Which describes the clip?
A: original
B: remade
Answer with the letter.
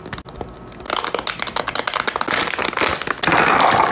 A